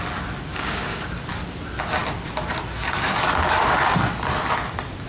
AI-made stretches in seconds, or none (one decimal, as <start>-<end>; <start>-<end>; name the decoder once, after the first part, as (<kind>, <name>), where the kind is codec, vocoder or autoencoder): 0.5-1.1 (codec, DAC)